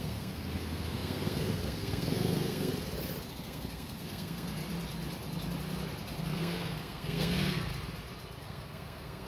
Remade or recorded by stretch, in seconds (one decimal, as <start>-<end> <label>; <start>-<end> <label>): 0.0-2.7 remade; 2.7-3.3 recorded; 3.3-4.6 remade; 4.6-6.2 recorded; 6.2-7.7 remade; 7.7-8.4 recorded; 8.4-9.3 remade